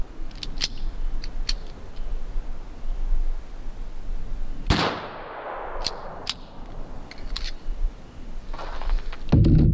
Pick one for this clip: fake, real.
real